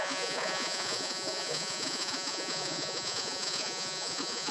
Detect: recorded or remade remade